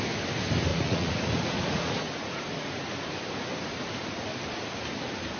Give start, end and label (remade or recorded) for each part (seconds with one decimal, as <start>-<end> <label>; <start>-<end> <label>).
0.0-0.7 recorded; 0.7-3.0 remade; 3.0-5.4 recorded